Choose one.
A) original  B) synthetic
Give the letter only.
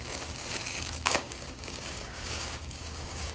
B